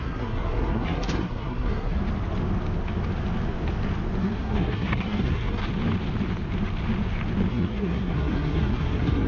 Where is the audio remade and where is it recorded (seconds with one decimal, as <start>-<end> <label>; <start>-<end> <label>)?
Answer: 0.0-2.0 remade; 2.0-4.2 recorded; 4.2-5.6 remade; 5.6-7.5 recorded; 7.5-9.3 remade